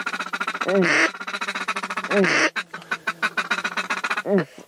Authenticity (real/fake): real